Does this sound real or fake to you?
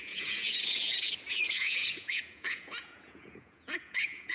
fake